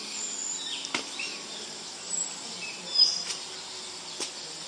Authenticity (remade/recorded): recorded